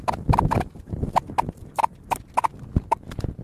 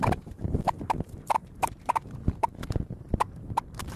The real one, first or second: first